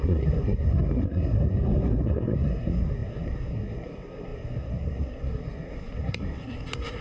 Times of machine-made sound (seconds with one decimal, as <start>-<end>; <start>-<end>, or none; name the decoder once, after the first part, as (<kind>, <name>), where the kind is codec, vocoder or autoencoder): 0.0-7.0 (codec, SNAC)